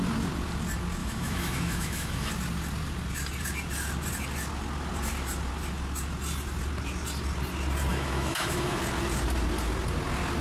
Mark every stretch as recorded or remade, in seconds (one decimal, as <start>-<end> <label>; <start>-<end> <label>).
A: 0.0-1.0 recorded; 1.0-2.3 remade; 2.3-7.9 recorded; 7.9-8.8 remade; 8.8-10.4 recorded